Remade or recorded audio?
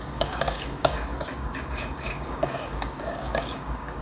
remade